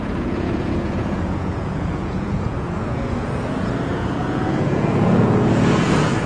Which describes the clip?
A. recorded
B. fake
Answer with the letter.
B